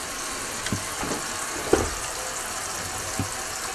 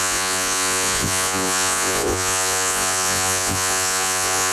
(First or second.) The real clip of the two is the first